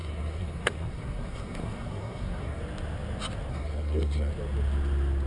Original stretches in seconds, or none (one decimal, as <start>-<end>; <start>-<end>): 2.6-3.5; 4.3-5.3